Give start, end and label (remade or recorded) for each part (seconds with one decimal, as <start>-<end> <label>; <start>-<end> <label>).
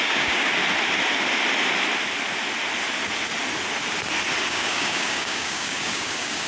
0.0-0.6 remade; 0.6-4.5 recorded; 4.5-6.5 remade